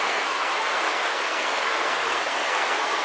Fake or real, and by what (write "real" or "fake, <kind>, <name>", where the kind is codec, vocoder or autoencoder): fake, codec, SNAC